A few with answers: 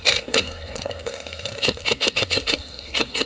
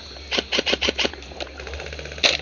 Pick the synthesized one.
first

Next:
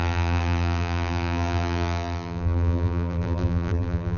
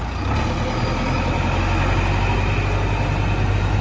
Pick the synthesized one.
first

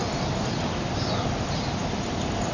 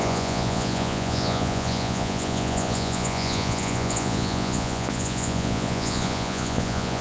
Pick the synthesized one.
second